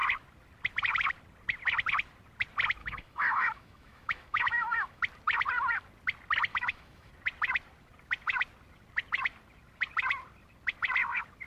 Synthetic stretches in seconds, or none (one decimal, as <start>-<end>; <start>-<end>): 2.8-5.0; 6.5-7.1